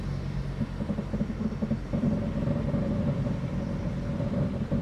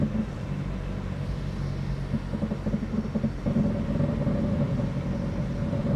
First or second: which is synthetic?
first